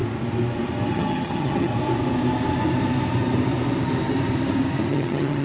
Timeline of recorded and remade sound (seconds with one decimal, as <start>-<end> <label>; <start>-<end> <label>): 0.0-0.9 recorded; 0.9-1.7 remade; 1.7-4.9 recorded; 4.9-5.4 remade